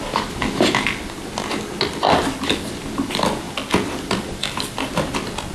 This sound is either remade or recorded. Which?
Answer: recorded